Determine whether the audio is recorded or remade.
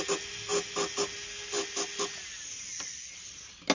recorded